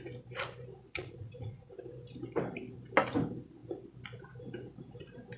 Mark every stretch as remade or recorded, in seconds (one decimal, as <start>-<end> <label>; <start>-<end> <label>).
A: 0.0-0.9 recorded; 0.9-1.7 remade; 1.7-5.4 recorded